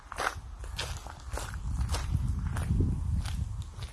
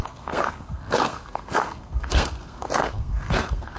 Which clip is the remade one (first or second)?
second